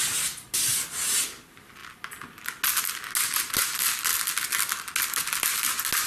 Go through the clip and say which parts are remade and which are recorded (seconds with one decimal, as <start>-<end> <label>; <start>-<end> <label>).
0.0-6.1 recorded